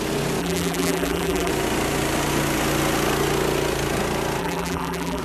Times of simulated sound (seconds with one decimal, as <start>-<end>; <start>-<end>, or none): 0.4-1.5; 4.4-5.2